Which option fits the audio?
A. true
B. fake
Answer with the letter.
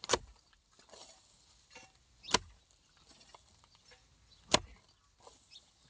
A